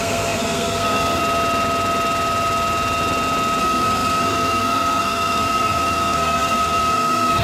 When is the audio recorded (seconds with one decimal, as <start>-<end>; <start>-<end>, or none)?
1.2-3.6